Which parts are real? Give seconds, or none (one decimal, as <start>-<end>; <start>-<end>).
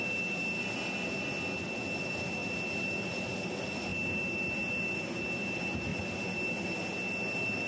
0.0-7.7